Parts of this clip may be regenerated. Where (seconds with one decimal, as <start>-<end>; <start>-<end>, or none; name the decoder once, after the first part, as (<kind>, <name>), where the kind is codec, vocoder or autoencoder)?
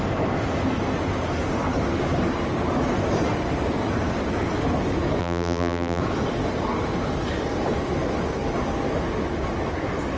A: 5.2-6.0 (vocoder, BigVGAN v2)